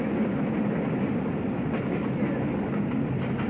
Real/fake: real